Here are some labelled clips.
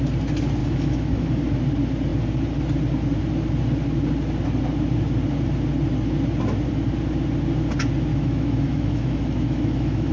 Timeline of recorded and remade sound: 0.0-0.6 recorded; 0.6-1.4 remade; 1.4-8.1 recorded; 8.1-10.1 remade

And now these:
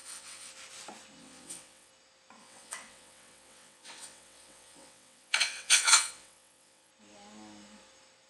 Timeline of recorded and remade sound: 0.0-0.5 remade; 0.5-1.2 recorded; 1.2-1.9 remade; 1.9-2.4 recorded; 2.4-6.9 remade; 6.9-8.3 recorded